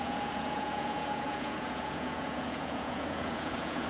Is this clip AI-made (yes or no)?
yes